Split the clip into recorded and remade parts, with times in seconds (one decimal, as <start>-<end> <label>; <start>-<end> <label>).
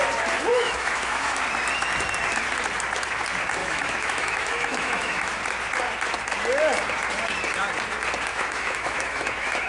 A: 0.0-0.5 recorded; 0.5-1.4 remade; 1.4-3.6 recorded; 3.6-5.4 remade; 5.4-8.3 recorded; 8.3-9.7 remade